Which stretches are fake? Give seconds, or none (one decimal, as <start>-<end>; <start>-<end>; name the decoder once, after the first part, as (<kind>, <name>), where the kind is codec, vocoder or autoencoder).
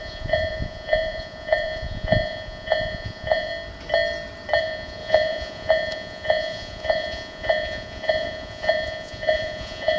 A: 0.0-3.5 (vocoder, Vocos); 4.6-10.0